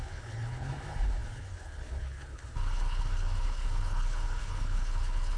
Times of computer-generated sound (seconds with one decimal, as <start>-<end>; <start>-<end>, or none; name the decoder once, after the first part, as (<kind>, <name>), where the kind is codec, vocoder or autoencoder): 0.0-5.4 (codec, HILCodec)